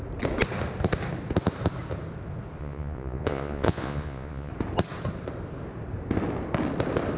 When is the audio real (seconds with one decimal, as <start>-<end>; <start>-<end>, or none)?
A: 0.0-2.6; 4.5-7.2